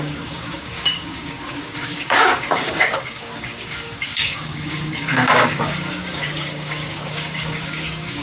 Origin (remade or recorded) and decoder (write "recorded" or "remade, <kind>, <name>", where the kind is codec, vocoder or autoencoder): remade, codec, DAC